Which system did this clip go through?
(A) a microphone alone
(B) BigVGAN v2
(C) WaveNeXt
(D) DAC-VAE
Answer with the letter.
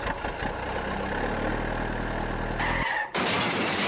A